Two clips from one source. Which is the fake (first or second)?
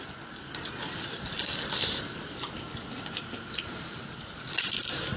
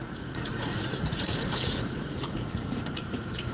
second